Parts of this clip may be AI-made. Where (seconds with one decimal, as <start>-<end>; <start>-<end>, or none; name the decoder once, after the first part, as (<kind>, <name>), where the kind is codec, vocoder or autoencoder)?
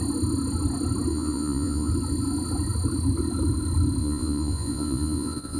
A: 1.1-1.9 (vocoder, Vocos); 4.0-5.6